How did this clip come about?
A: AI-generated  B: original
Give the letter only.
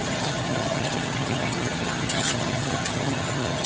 A